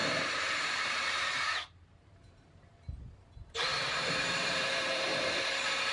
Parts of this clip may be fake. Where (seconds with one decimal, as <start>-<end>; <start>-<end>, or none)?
0.0-3.0; 3.7-5.4